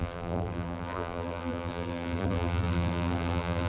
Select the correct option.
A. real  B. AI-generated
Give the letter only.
B